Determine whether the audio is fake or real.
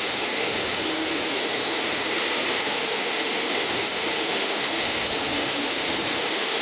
fake